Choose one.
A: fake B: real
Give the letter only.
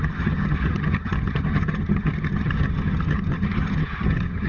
A